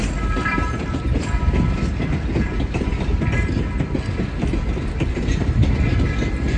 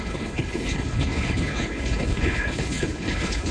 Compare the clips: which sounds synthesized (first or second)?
second